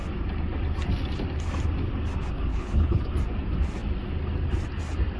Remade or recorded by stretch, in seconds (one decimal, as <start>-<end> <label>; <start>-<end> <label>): 0.0-2.5 recorded; 2.5-3.0 remade; 3.0-5.2 recorded